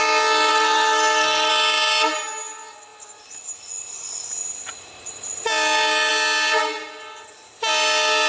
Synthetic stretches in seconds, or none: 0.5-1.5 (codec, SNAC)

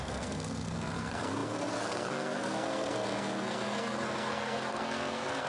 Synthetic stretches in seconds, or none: 0.0-5.5 (codec, SNAC)

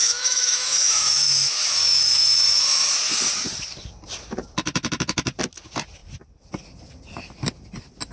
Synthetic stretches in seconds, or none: 0.0-2.9 (autoencoder, DAC-VAE)